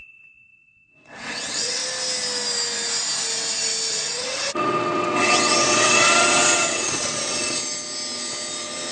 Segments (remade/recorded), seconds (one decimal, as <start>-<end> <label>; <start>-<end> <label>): 0.0-1.8 remade; 1.8-3.9 recorded; 3.9-7.6 remade; 7.6-8.9 recorded

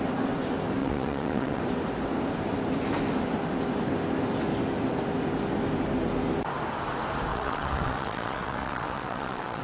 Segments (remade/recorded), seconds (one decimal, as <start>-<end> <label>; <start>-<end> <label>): 0.0-0.8 recorded; 0.8-1.6 remade; 1.6-7.3 recorded; 7.3-9.6 remade